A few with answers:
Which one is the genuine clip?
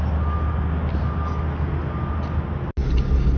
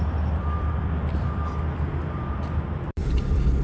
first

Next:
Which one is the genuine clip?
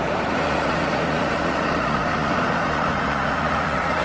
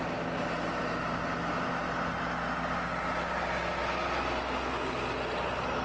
second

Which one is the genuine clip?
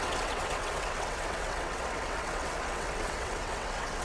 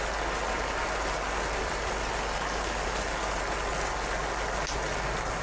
second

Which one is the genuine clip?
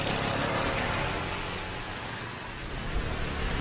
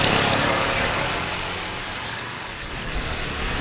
first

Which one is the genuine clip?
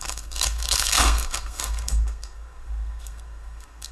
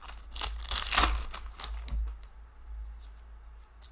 second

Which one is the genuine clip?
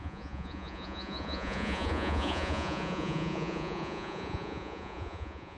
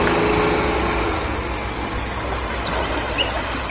second